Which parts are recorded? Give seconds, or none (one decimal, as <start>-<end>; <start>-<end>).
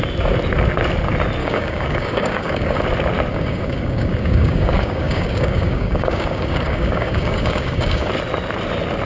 0.0-1.4; 2.8-3.3; 8.1-9.0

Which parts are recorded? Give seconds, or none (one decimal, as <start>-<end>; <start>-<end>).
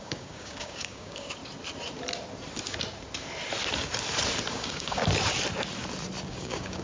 1.4-4.5; 5.0-6.3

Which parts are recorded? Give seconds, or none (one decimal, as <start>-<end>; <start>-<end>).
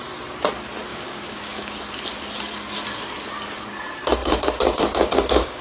0.0-0.9; 1.8-4.2